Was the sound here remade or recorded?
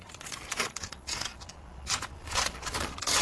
remade